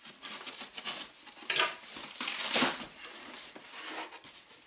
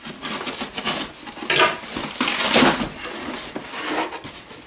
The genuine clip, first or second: second